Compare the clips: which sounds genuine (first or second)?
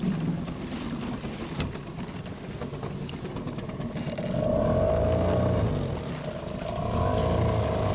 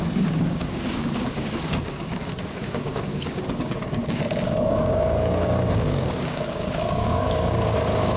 first